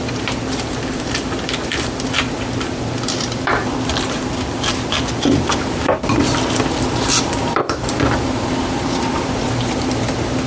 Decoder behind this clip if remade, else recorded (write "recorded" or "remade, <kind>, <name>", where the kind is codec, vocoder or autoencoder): remade, vocoder, BigVGAN v2